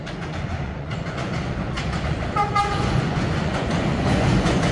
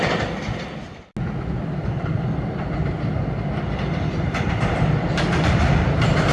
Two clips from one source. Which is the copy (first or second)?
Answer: first